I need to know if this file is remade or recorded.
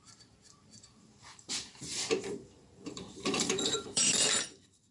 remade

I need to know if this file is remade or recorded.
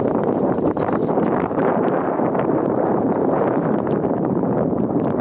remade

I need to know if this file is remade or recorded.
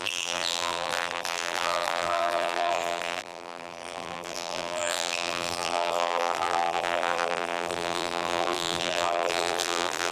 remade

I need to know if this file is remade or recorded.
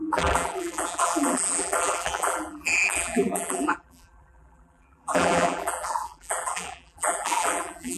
remade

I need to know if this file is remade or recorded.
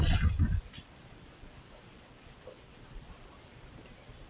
remade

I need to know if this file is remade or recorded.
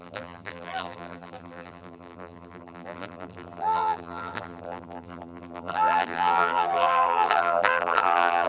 remade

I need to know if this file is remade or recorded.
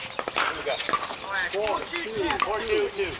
recorded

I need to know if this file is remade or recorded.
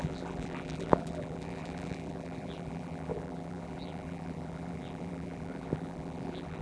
remade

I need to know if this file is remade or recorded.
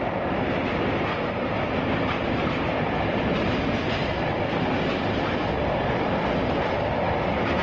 recorded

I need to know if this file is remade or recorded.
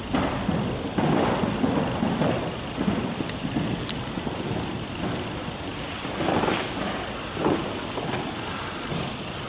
recorded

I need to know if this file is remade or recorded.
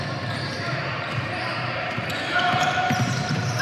remade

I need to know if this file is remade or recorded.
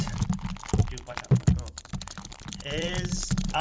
remade